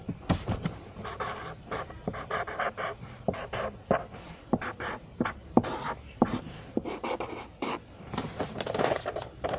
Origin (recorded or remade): remade